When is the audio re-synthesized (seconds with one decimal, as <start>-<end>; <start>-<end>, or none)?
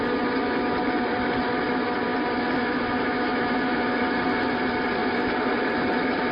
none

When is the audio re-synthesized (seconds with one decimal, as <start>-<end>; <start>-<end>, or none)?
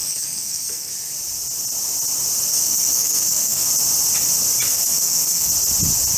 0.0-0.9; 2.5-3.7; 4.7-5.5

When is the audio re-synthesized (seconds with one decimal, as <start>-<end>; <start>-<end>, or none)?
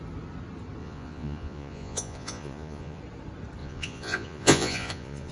0.8-3.0; 3.6-5.3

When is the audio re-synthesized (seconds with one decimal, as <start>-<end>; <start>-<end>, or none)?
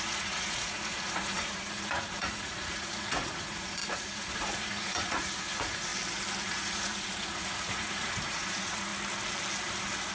0.0-5.9; 6.4-8.9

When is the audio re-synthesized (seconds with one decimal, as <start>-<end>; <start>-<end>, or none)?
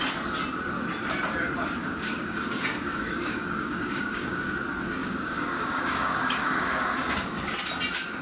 1.8-4.5; 5.0-7.4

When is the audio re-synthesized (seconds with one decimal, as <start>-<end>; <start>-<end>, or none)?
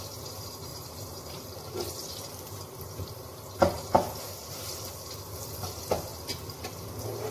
0.7-3.5; 4.4-4.9